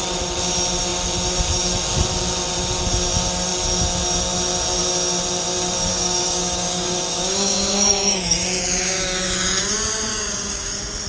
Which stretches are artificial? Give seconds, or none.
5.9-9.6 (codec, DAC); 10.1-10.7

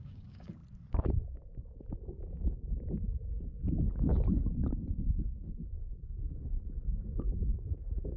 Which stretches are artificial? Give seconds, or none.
0.0-0.6 (codec, DAC); 3.6-4.1; 5.5-8.2

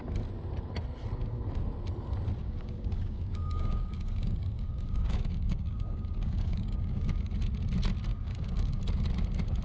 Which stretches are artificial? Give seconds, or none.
2.4-7.3 (codec, DAC); 8.1-8.8